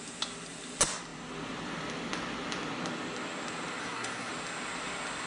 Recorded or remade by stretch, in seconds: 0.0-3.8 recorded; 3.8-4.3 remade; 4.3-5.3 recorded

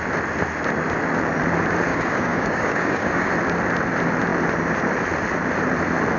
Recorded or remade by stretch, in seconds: 0.0-1.9 recorded; 1.9-3.3 remade; 3.3-6.2 recorded